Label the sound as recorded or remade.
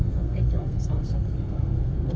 remade